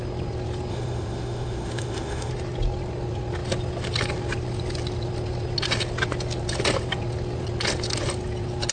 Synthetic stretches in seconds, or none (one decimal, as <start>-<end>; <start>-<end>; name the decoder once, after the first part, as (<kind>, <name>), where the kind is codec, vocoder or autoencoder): 0.7-2.3 (autoencoder, DAC-VAE)